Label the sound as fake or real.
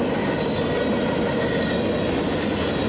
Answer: real